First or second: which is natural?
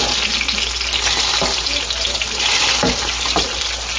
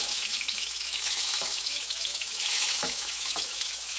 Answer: first